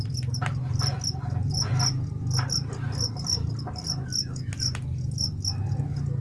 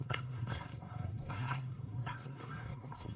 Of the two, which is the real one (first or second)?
first